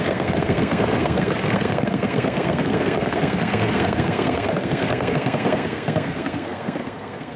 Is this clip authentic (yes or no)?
no